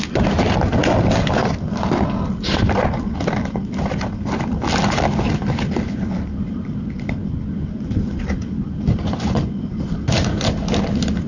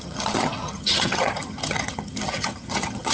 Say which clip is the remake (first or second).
second